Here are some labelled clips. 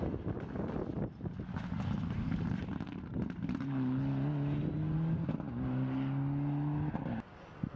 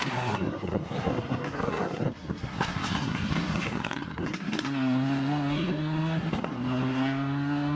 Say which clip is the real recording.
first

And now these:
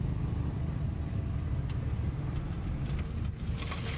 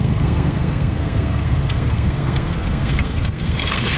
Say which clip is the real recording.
first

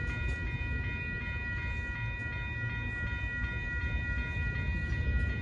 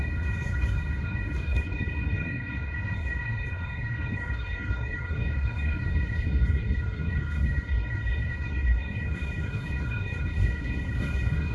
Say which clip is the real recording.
first